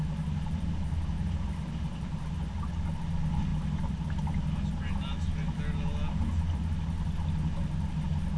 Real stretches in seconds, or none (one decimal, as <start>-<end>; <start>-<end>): 0.0-8.4